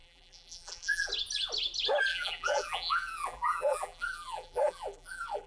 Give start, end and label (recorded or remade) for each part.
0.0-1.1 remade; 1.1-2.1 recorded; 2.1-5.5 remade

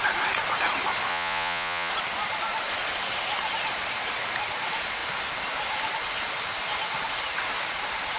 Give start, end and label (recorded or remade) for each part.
0.0-1.1 recorded; 1.1-1.9 remade; 1.9-8.2 recorded

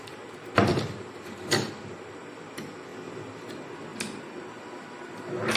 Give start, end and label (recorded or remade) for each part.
0.0-0.7 recorded; 0.7-1.9 remade; 1.9-5.6 recorded

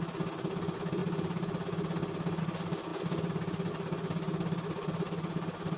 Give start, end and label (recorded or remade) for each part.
0.0-5.8 recorded